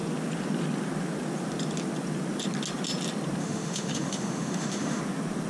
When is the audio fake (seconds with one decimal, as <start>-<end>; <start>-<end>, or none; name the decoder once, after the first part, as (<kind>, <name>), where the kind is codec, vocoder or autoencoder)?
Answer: 3.4-5.0 (autoencoder, DAC-VAE)